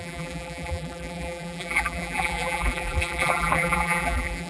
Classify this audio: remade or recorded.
remade